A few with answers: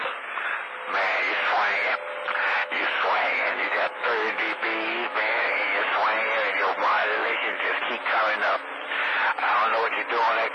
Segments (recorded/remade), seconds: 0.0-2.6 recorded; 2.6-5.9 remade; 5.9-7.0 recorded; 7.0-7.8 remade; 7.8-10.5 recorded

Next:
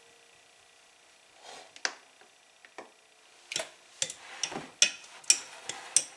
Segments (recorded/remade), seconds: 0.0-6.2 recorded

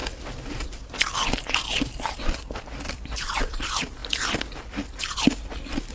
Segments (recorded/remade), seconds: 0.0-5.9 recorded

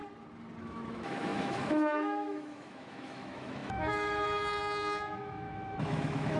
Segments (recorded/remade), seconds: 0.0-0.6 recorded; 0.6-6.4 remade

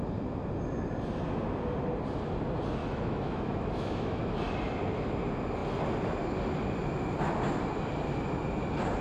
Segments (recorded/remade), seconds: 0.0-2.8 recorded; 2.8-4.2 remade; 4.2-9.0 recorded

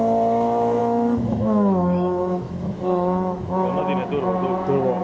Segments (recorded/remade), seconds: 0.0-0.8 recorded; 0.8-3.8 remade; 3.8-5.0 recorded

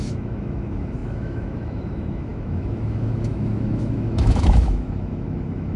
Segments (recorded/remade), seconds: 0.0-5.8 remade